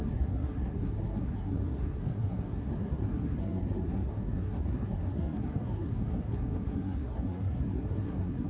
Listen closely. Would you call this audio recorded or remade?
remade